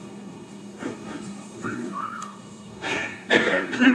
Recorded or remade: remade